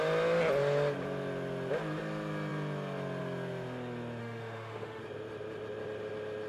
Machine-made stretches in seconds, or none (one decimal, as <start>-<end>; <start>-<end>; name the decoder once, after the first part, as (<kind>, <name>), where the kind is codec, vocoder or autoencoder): 4.2-5.0 (autoencoder, DAC-VAE)